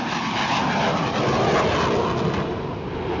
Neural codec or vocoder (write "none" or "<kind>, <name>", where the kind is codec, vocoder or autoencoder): none